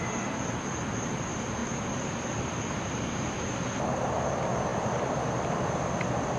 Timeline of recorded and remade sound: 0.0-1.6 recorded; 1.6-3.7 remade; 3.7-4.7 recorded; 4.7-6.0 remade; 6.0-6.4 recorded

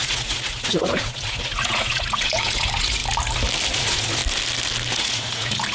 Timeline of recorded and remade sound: 0.0-3.0 remade; 3.0-3.7 recorded; 3.7-4.2 remade; 4.2-4.9 recorded; 4.9-5.7 remade

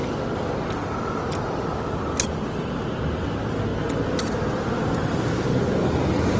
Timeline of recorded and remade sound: 0.0-6.4 recorded

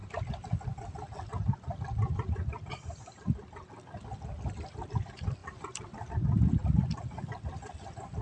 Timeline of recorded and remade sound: 0.0-5.4 recorded; 5.4-6.1 remade; 6.1-8.2 recorded

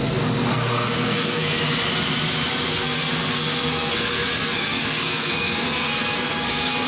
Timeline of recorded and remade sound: 0.0-0.5 recorded; 0.5-1.6 remade; 1.6-2.7 recorded; 2.7-6.9 remade

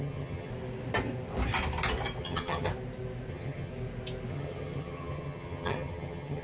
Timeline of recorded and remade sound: 0.0-0.5 remade; 0.5-2.2 recorded; 2.2-2.7 remade; 2.7-3.3 recorded; 3.3-3.7 remade; 3.7-4.3 recorded; 4.3-6.4 remade